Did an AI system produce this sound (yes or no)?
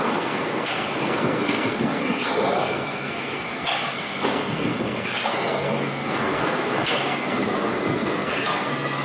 yes